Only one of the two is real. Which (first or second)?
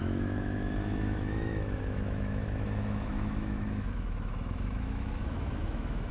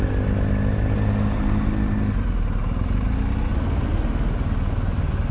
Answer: second